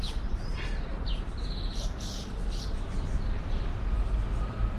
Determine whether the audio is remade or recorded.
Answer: remade